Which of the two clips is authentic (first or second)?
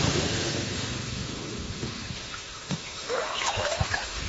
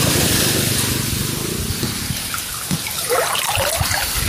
second